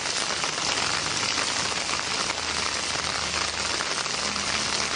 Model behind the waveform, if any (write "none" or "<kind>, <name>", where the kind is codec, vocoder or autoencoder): none